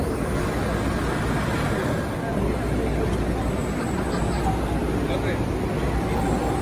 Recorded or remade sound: recorded